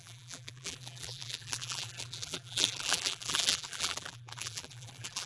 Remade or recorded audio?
remade